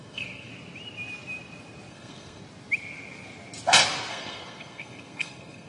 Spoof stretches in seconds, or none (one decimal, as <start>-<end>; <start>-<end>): 0.0-0.5; 1.9-2.4; 4.1-5.7